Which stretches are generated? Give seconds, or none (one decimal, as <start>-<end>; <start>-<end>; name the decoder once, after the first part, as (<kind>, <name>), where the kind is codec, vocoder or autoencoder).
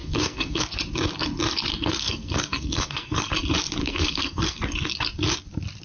0.0-0.6 (codec, SNAC); 1.7-3.3; 3.8-4.6